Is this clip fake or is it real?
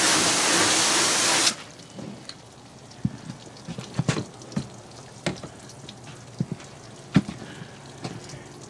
real